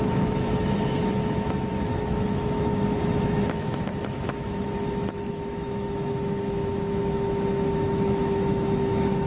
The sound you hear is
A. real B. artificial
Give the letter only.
B